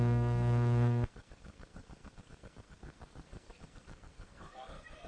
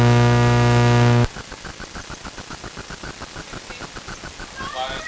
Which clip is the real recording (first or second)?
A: second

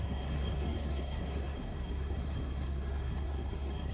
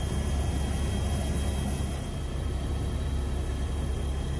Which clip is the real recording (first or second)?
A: second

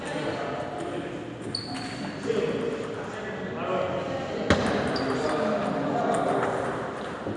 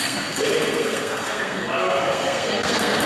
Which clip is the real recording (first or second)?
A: first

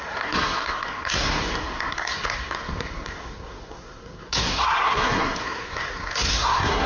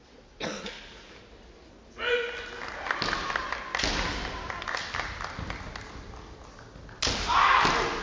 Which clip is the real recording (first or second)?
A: second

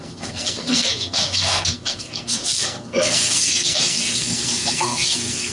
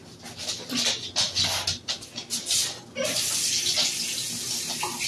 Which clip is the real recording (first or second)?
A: second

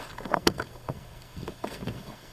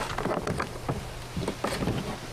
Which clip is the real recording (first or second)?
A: second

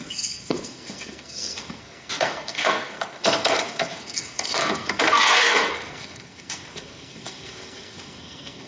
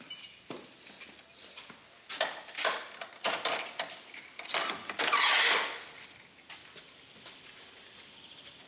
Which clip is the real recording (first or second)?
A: second